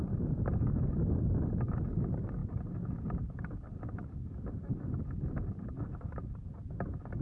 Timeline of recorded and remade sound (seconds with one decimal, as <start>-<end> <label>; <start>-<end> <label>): 0.0-7.2 recorded